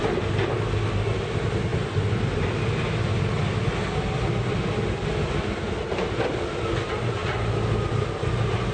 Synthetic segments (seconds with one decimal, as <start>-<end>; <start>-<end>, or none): none